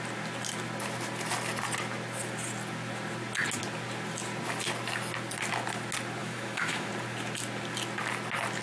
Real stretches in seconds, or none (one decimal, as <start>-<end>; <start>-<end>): 0.0-6.2; 6.9-8.6